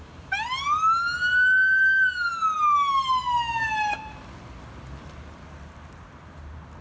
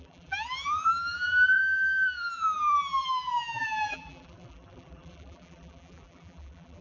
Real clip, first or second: first